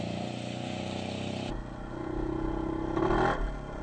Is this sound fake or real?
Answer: real